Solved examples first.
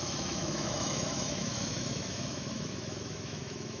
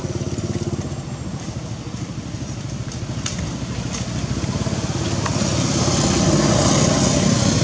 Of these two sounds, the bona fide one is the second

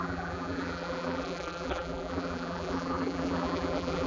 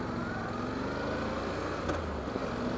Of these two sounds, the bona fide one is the second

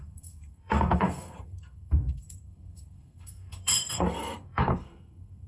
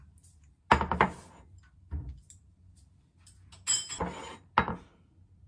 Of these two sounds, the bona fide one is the second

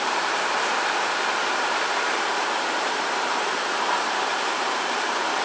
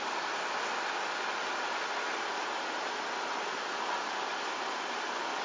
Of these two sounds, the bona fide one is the second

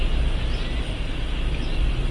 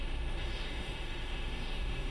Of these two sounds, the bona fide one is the first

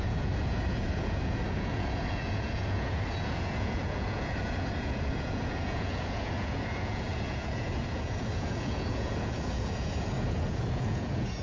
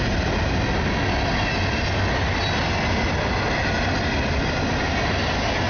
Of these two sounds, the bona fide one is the second